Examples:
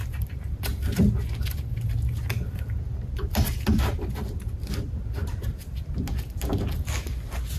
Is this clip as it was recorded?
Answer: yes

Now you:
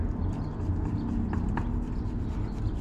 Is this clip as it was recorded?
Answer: yes